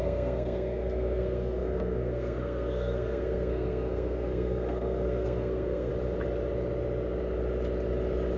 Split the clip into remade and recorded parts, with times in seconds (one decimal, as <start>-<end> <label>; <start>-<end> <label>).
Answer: 0.0-5.9 remade; 5.9-8.4 recorded